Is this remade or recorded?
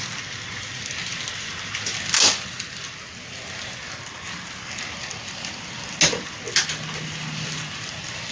recorded